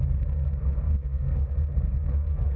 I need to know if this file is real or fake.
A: fake